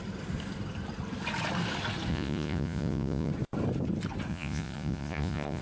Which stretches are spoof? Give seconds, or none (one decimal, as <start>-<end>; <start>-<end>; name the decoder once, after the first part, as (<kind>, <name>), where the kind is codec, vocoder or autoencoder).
2.1-3.3 (vocoder, Vocos); 4.3-5.6